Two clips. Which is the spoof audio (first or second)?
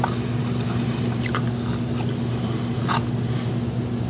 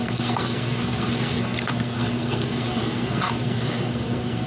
second